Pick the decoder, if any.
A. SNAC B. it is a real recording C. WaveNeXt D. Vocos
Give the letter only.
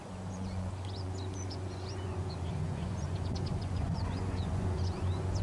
D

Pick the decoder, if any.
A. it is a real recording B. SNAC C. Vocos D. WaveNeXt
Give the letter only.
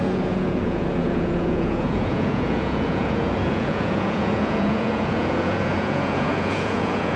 C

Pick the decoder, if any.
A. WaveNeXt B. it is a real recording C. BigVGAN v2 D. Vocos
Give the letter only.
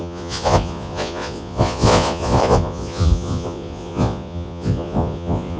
D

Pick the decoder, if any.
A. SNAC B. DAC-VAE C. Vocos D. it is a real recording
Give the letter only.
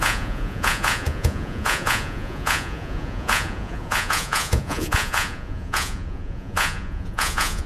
C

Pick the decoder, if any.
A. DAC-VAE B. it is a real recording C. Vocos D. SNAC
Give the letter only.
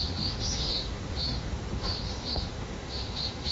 A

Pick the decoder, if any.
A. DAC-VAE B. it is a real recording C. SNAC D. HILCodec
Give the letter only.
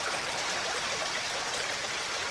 B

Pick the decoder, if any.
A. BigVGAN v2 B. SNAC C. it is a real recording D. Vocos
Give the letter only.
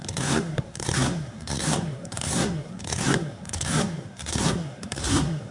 B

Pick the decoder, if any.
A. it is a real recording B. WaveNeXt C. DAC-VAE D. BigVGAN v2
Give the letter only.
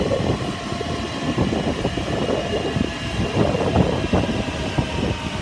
A